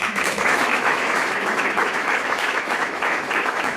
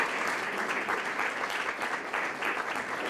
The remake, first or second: first